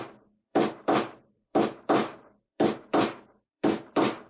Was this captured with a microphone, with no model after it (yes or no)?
no